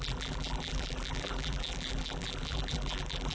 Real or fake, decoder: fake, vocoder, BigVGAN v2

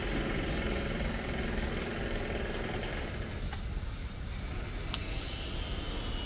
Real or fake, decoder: real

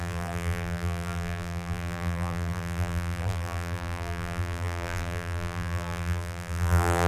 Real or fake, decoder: fake, vocoder, BigVGAN v2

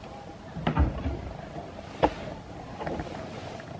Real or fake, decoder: fake, vocoder, BigVGAN v2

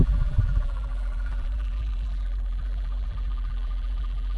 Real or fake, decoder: fake, vocoder, BigVGAN v2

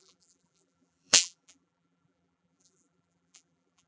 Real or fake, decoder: fake, vocoder, BigVGAN v2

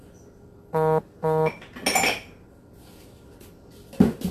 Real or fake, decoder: real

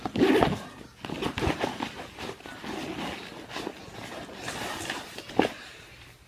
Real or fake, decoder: real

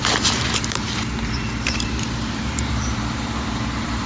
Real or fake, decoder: fake, vocoder, BigVGAN v2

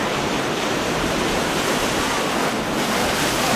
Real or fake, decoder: fake, vocoder, BigVGAN v2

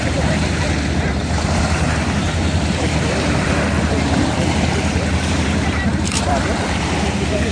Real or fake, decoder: fake, vocoder, BigVGAN v2